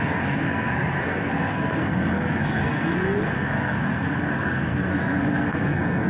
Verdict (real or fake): fake